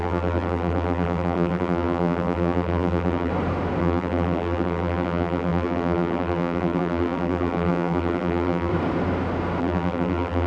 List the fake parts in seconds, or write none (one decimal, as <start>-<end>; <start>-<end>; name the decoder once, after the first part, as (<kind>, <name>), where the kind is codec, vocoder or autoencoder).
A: 0.0-3.3 (vocoder, BigVGAN v2); 3.8-8.7; 9.6-10.5